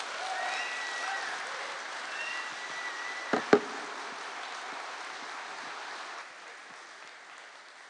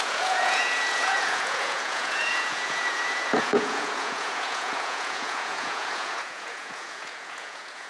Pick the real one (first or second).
first